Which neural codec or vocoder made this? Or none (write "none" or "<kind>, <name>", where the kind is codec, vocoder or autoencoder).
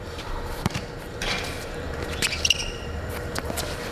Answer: vocoder, BigVGAN v2